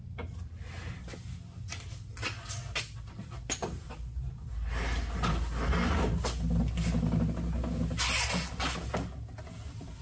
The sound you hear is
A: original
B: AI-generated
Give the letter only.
A